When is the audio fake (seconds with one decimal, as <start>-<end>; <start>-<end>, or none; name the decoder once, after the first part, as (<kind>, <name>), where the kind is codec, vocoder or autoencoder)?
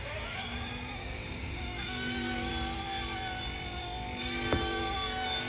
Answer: 0.0-2.5 (codec, DAC); 4.2-5.5